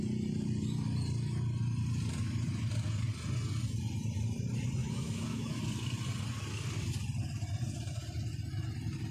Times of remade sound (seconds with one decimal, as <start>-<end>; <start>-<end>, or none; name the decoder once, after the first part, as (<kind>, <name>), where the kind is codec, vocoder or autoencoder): 4.8-5.6 (autoencoder, DAC-VAE)